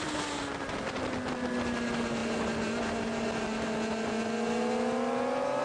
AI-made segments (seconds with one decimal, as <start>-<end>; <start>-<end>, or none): none